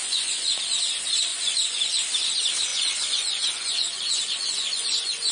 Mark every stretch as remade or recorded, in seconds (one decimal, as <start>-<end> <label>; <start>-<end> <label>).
0.0-0.6 remade; 0.6-1.3 recorded; 1.3-1.8 remade; 1.8-2.7 recorded; 2.7-5.3 remade